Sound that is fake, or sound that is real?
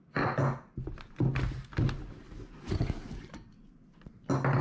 real